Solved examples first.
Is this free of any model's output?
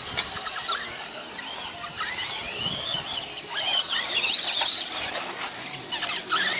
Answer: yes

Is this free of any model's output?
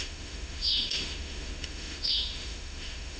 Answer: no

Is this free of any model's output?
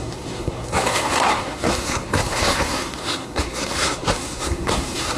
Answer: no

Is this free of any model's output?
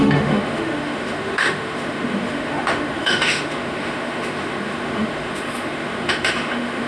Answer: no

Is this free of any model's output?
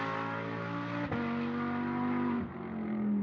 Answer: yes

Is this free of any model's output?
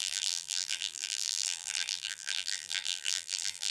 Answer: no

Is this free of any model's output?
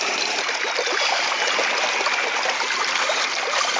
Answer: yes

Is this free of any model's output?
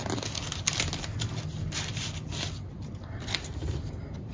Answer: yes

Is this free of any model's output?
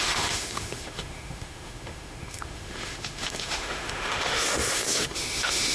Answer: no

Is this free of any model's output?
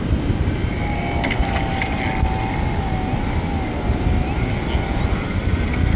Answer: yes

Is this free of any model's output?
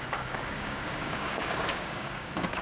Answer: no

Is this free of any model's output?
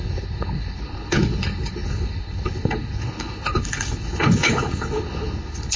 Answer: no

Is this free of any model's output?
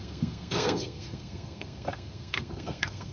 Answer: no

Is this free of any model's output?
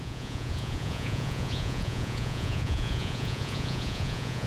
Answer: no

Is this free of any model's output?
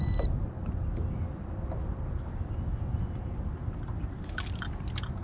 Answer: yes